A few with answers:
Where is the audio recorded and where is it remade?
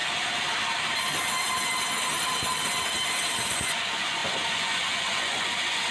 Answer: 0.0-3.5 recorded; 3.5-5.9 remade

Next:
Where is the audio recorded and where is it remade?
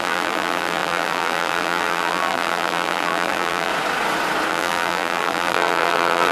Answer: 0.0-3.7 remade; 3.7-4.5 recorded; 4.5-6.3 remade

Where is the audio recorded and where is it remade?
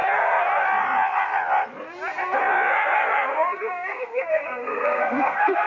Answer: 0.0-3.3 recorded; 3.3-5.7 remade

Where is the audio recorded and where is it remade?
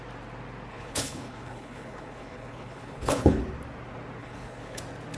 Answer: 0.0-0.7 recorded; 0.7-3.4 remade; 3.4-4.2 recorded; 4.2-4.8 remade; 4.8-5.2 recorded